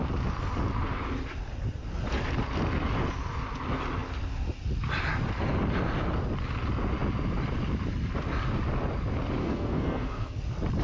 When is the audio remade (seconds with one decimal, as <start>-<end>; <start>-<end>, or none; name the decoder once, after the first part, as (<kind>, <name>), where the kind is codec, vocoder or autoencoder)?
9.4-10.4 (codec, SNAC)